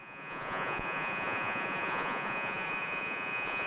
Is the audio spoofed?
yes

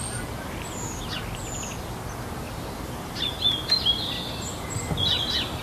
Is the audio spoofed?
no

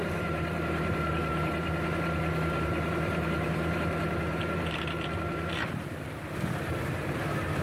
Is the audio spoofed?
yes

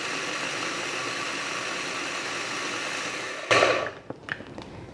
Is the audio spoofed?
no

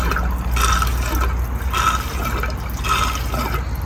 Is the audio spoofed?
no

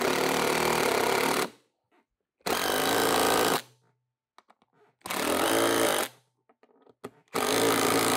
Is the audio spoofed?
no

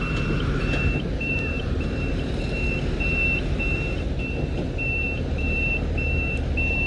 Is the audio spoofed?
yes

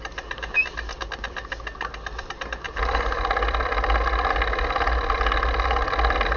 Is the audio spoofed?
no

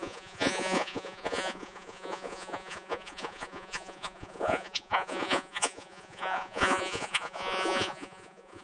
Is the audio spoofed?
yes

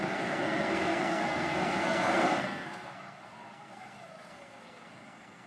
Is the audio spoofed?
yes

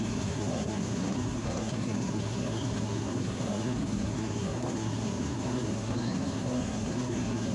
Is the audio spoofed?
yes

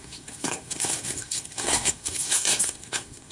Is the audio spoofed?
yes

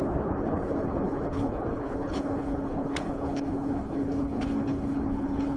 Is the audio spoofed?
yes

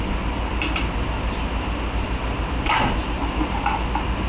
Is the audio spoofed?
no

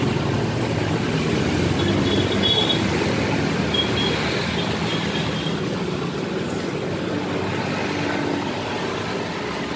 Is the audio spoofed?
no